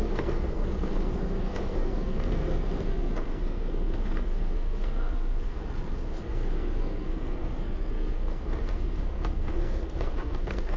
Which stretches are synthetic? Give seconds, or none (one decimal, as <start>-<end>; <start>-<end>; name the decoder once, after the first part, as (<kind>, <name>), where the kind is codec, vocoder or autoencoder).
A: 0.0-10.8 (codec, SNAC)